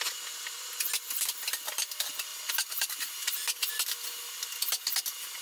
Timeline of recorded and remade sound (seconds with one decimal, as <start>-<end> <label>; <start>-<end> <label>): 0.0-2.3 recorded; 2.3-3.7 remade; 3.7-5.4 recorded